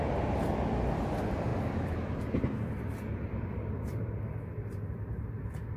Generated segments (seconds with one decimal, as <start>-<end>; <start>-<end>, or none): 1.5-4.2